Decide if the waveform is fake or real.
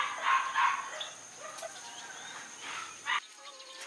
real